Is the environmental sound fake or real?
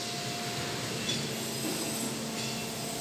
real